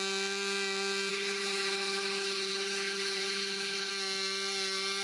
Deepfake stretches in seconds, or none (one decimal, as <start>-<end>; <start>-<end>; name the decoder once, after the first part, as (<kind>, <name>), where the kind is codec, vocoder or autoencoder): 1.1-3.9 (codec, HILCodec)